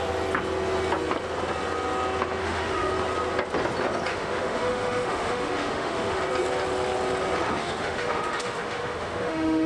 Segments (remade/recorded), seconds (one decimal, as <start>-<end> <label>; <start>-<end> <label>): 0.0-2.4 recorded; 2.4-2.9 remade; 2.9-4.1 recorded; 4.1-6.2 remade; 6.2-7.6 recorded; 7.6-9.7 remade